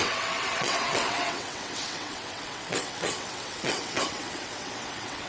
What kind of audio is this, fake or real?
fake